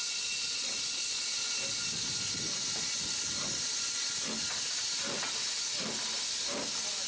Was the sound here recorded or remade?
recorded